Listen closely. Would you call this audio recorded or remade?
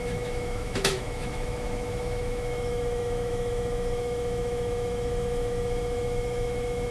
remade